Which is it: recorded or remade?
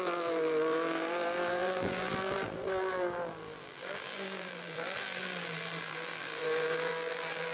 remade